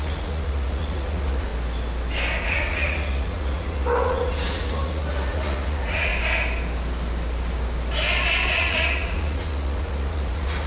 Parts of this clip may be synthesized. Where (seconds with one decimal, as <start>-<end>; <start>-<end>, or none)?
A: 0.0-1.5; 2.4-6.1; 8.5-10.7